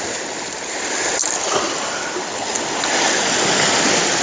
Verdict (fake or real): real